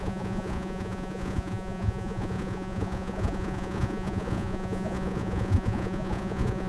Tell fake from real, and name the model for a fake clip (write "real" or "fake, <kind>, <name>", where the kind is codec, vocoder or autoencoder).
fake, vocoder, Vocos